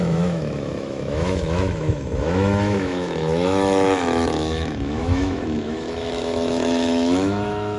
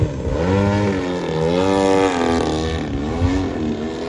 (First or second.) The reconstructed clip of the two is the first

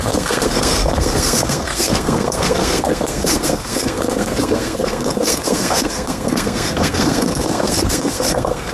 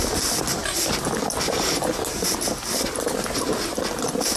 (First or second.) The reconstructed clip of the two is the first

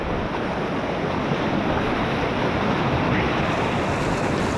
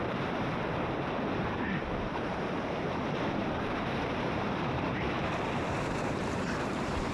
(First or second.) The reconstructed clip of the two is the second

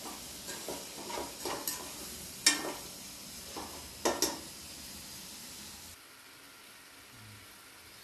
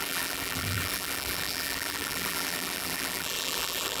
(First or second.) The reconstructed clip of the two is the second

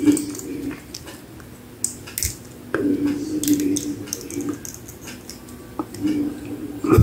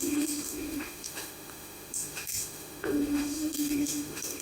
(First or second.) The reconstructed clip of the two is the second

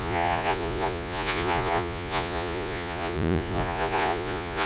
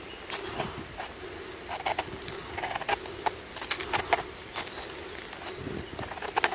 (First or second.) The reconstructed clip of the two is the first